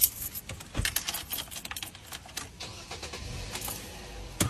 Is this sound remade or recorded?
recorded